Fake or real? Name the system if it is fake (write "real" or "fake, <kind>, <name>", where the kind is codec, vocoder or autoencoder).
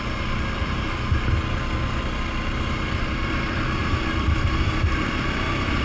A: real